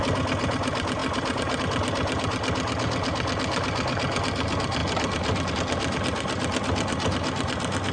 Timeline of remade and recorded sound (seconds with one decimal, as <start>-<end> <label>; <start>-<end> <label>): 0.0-7.9 recorded